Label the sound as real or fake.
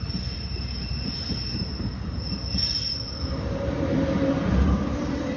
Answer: fake